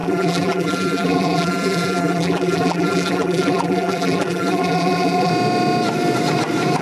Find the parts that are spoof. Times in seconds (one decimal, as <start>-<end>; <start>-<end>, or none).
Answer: 0.0-5.3

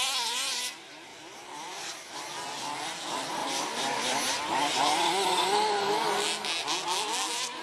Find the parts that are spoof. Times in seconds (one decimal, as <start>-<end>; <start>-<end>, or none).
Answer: 1.1-2.2; 3.4-4.2

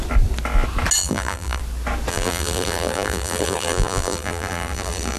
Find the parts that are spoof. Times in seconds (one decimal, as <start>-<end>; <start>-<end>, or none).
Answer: 1.0-1.6; 2.1-5.2

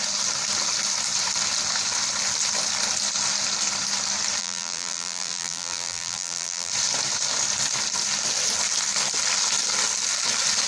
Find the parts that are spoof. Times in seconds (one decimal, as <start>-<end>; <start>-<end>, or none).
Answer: 4.4-6.7

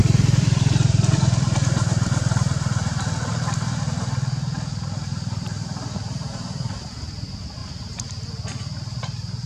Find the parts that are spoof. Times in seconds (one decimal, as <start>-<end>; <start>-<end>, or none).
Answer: 0.0-7.6; 9.0-9.5